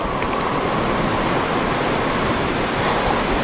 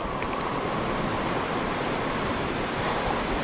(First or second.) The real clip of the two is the first